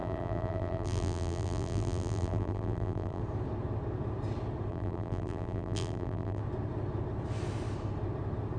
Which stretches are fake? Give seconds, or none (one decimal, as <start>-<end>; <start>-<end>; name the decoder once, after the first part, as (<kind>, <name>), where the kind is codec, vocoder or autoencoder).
0.0-3.2 (vocoder, BigVGAN v2); 4.7-6.4